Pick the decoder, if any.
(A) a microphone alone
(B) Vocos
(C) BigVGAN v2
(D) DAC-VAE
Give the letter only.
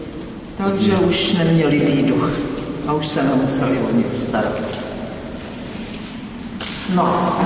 A